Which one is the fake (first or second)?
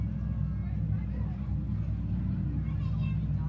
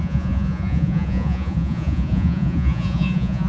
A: second